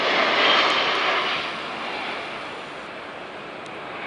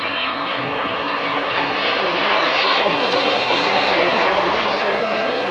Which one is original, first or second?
first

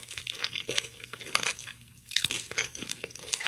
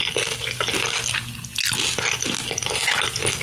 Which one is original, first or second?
second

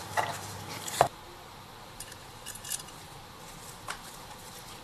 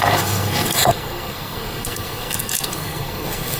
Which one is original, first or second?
first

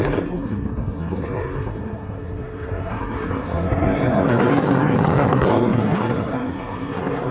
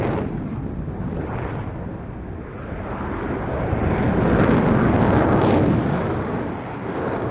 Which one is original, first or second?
second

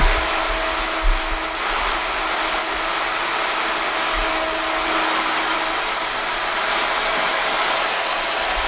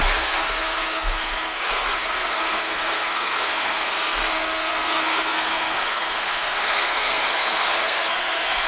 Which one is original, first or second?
first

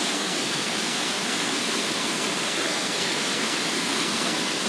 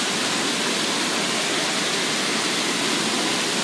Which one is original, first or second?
second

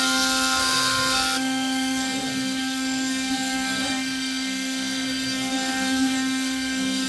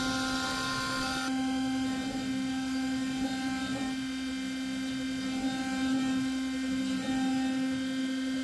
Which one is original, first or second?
second